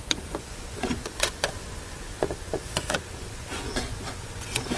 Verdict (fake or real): fake